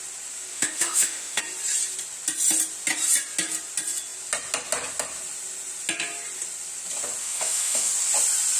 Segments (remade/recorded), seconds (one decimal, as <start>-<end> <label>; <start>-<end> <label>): 0.0-0.5 recorded; 0.5-1.4 remade; 1.4-7.2 recorded; 7.2-7.9 remade; 7.9-8.6 recorded